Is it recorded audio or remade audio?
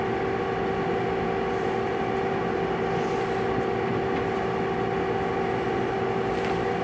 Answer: recorded